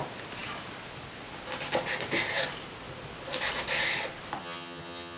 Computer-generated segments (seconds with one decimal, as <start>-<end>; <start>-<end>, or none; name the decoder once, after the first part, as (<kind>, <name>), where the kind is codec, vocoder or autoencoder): 4.4-5.2 (vocoder, HiFi-GAN)